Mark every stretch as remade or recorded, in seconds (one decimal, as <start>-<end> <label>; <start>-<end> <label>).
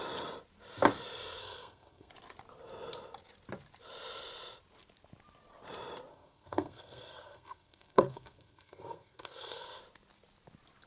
0.0-1.4 recorded; 1.4-2.1 remade; 2.1-6.1 recorded; 6.1-9.8 remade; 9.8-10.9 recorded